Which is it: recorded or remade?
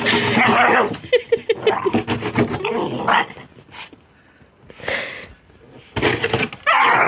recorded